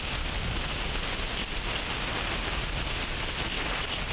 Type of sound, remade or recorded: recorded